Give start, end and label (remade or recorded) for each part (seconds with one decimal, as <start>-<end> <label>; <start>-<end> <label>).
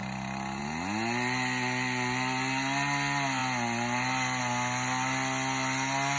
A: 0.0-6.2 recorded